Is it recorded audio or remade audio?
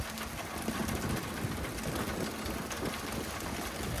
recorded